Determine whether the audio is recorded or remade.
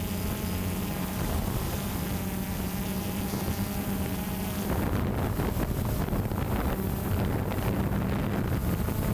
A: recorded